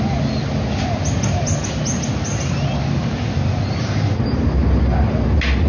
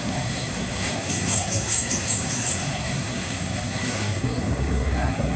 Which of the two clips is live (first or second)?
first